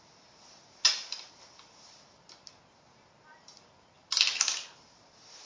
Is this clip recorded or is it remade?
recorded